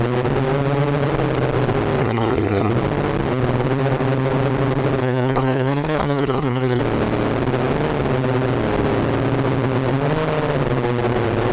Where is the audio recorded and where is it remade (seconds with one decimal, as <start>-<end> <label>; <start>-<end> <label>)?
0.0-2.0 recorded; 2.0-2.7 remade; 2.7-5.0 recorded; 5.0-6.8 remade; 6.8-11.5 recorded